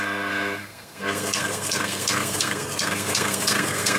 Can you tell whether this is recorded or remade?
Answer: remade